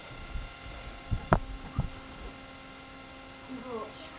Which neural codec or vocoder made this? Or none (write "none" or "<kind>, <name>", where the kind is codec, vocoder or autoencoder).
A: none